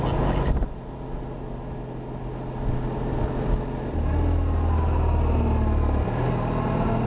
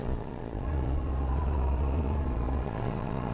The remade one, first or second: second